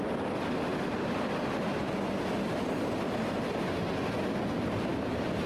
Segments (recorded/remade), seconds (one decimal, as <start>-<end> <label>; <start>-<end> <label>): 0.0-5.5 recorded